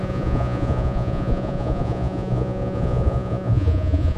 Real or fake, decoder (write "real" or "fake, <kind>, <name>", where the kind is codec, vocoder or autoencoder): fake, vocoder, Vocos